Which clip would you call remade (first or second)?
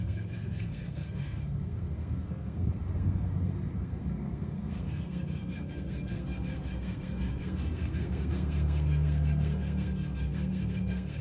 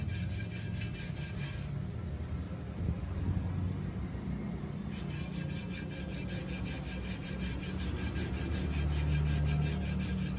first